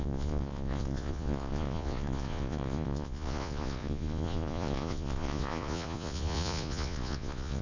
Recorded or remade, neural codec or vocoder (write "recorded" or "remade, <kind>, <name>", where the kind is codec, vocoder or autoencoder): remade, vocoder, Vocos